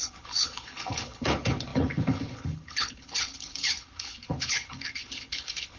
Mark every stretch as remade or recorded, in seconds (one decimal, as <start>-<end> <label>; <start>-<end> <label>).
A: 0.0-5.8 remade